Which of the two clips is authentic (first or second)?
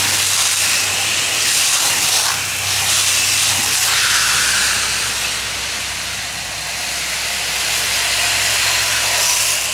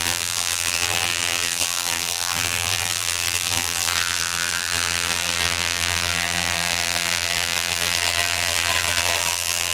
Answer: first